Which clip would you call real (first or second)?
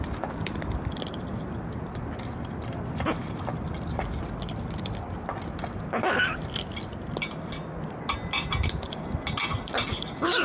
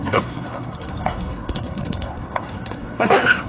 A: first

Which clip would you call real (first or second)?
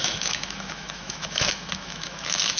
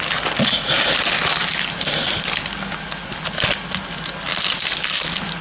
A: second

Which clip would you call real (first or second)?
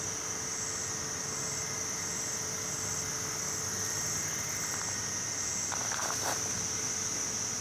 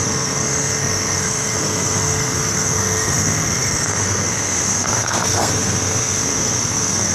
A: first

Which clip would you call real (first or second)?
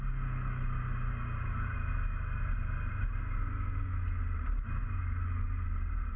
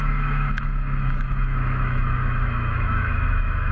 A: first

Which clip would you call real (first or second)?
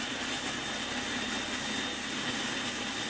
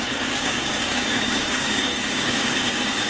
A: first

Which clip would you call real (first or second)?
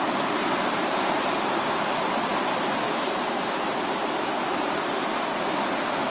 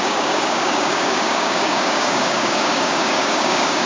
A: first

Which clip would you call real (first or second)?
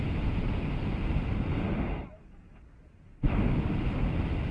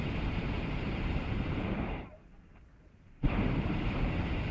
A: first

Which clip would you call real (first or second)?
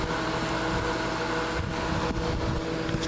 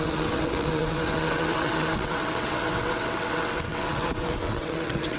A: first